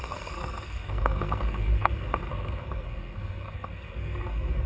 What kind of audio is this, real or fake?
fake